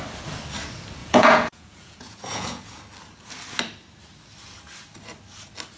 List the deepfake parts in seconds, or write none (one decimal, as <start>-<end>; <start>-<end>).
1.0-2.8